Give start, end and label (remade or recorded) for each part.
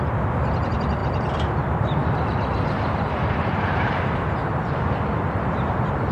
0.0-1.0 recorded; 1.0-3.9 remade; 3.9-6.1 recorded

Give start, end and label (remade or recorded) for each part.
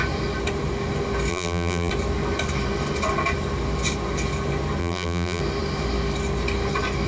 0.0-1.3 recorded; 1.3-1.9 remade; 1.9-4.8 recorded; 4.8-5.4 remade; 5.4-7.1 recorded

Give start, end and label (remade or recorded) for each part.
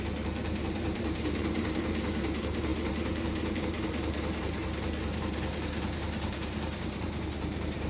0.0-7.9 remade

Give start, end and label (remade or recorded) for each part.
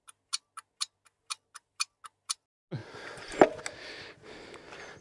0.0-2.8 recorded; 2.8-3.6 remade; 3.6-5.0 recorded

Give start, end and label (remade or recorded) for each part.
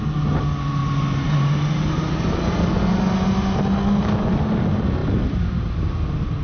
0.0-6.4 recorded